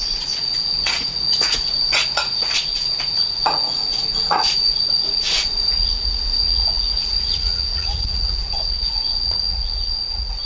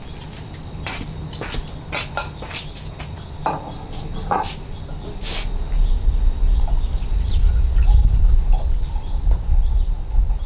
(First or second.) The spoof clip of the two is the first